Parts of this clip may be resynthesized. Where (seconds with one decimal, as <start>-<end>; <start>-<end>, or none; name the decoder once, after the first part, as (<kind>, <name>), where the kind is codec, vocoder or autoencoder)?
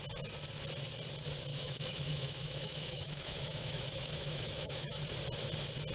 1.5-5.0 (autoencoder, DAC-VAE)